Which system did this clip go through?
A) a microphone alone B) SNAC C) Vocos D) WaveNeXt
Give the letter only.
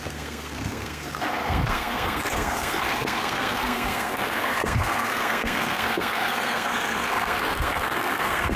B